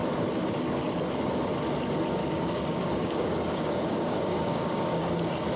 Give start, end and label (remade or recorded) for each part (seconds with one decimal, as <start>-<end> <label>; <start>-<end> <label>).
0.0-2.2 recorded; 2.2-5.1 remade; 5.1-5.6 recorded